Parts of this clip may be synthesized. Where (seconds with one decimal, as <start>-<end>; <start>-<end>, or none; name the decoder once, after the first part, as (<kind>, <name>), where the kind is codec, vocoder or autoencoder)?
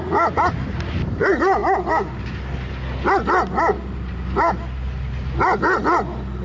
none